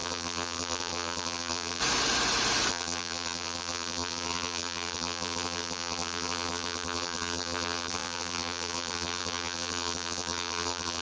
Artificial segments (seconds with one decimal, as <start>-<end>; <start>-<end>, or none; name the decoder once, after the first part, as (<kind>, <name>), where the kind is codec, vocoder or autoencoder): 0.0-1.8 (vocoder, BigVGAN v2); 2.7-11.0

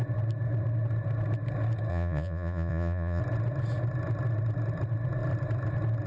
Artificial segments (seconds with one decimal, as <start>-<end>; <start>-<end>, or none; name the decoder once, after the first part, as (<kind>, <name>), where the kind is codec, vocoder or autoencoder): 1.9-3.2 (vocoder, Vocos)